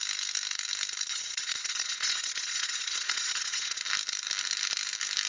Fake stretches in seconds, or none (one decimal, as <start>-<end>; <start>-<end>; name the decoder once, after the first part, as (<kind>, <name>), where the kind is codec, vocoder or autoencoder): 1.1-3.8 (vocoder, Vocos)